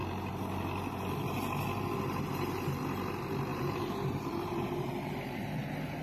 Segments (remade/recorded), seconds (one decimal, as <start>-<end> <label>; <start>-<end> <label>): 0.0-3.5 recorded; 3.5-4.9 remade; 4.9-6.0 recorded